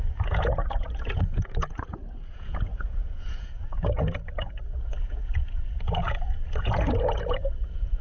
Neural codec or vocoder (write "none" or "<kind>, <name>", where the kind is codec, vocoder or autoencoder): vocoder, Vocos